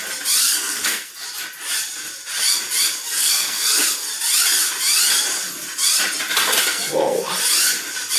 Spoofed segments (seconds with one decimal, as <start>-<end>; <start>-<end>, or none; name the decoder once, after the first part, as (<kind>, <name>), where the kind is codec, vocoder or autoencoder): 0.4-1.1 (codec, SNAC); 3.2-3.8; 6.6-7.3